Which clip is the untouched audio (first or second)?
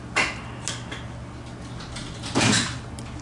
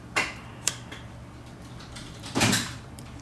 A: first